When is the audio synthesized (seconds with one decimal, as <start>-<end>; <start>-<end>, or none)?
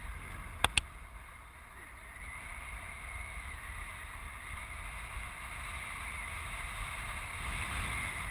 none